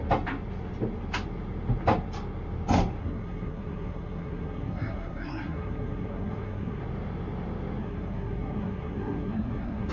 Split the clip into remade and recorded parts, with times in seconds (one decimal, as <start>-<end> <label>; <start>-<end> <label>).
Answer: 0.0-3.0 recorded; 3.0-6.8 remade; 6.8-7.8 recorded; 7.8-9.9 remade